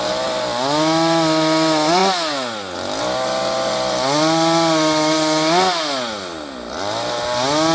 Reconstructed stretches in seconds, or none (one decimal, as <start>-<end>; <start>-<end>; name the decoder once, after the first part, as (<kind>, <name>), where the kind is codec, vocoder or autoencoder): none